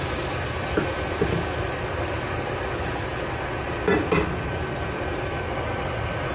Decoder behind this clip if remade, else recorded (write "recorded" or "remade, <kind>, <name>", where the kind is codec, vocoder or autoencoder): recorded